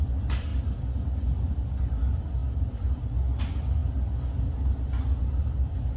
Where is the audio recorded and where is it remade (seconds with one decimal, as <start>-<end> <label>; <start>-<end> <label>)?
0.0-0.5 remade; 0.5-1.5 recorded; 1.5-3.8 remade; 3.8-5.4 recorded; 5.4-6.0 remade